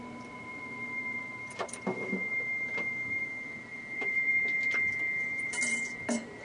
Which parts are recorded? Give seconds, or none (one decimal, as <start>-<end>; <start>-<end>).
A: none